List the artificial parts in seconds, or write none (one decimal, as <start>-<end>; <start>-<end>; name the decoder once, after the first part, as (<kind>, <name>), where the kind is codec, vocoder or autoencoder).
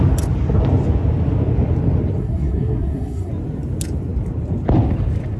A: 2.2-3.3 (codec, SNAC)